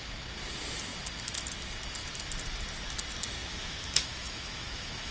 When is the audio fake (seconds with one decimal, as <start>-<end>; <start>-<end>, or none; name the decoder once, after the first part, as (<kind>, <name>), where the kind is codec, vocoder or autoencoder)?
3.5-5.1 (autoencoder, DAC-VAE)